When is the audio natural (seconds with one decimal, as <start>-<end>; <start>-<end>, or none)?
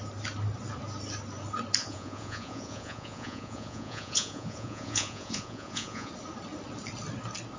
0.0-1.8; 6.1-7.6